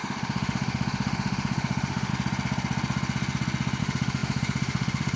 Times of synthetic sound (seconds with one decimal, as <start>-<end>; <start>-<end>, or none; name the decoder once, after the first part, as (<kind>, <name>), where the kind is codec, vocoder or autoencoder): 0.0-2.1 (autoencoder, DAC-VAE); 3.8-5.2